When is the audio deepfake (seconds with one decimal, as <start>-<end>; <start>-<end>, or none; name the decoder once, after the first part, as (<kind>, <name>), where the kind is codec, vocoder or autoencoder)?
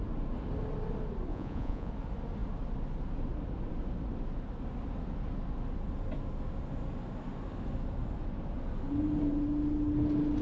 1.3-1.9 (vocoder, Vocos)